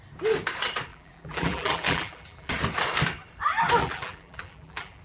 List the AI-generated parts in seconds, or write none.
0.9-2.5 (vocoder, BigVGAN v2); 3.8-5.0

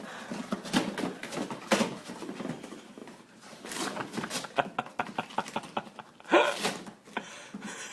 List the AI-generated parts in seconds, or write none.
1.2-1.8 (vocoder, BigVGAN v2); 3.0-4.0

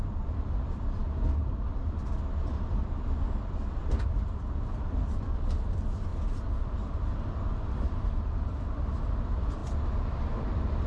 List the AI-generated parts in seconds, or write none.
0.0-1.0 (vocoder, BigVGAN v2); 2.9-6.1; 7.8-10.9